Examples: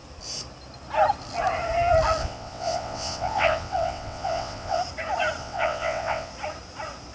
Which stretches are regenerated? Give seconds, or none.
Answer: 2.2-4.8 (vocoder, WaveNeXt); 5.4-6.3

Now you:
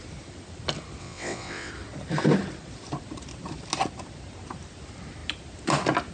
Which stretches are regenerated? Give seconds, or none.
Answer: 1.0-1.7 (vocoder, WaveNeXt)

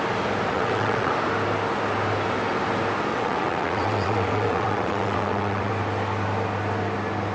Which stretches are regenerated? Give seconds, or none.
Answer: 0.5-1.1 (vocoder, WaveNeXt); 3.1-5.7

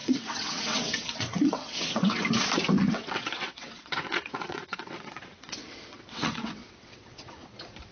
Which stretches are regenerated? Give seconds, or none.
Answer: 0.0-2.2 (vocoder, WaveNeXt); 2.8-7.5